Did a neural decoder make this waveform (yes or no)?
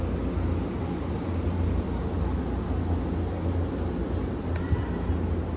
no